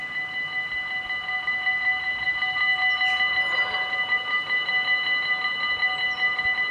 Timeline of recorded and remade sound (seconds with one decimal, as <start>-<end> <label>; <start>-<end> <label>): 0.0-6.7 recorded